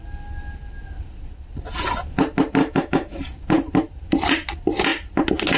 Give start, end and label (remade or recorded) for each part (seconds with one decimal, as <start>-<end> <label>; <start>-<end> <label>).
0.0-2.6 recorded; 2.6-3.2 remade; 3.2-5.6 recorded